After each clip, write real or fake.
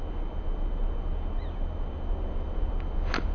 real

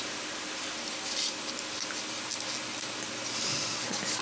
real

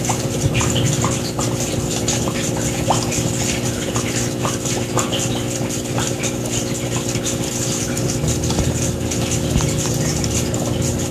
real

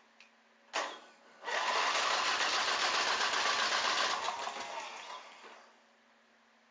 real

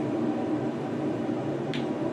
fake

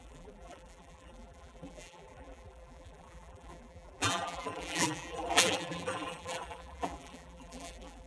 fake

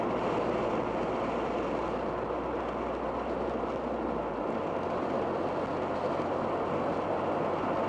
real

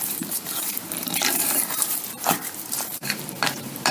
fake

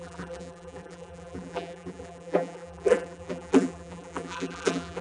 fake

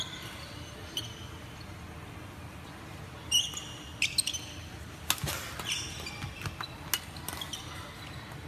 real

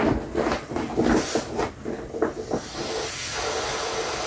real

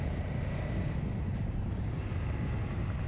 fake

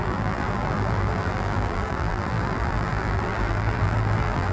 fake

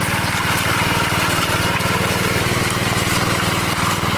fake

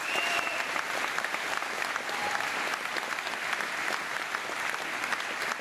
real